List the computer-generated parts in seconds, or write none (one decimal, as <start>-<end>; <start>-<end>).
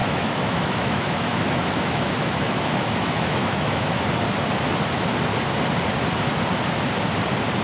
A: 0.0-4.0